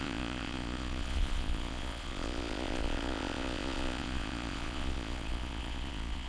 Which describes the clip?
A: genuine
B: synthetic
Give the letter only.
B